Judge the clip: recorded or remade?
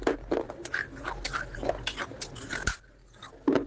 recorded